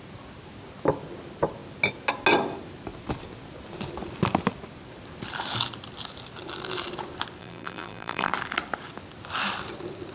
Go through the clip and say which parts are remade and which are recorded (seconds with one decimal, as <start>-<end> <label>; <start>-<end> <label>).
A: 0.0-7.4 recorded; 7.4-8.3 remade; 8.3-10.1 recorded